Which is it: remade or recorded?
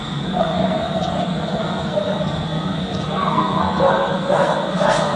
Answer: remade